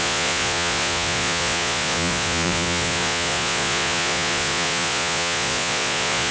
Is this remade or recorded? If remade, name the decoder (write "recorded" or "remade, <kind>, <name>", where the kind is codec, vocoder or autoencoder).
remade, vocoder, Vocos